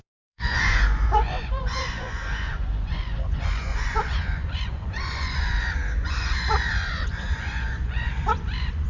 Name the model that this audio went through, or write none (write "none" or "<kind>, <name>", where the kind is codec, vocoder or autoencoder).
vocoder, Vocos